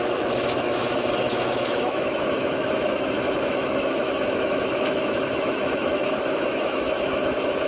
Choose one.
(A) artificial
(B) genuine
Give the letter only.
A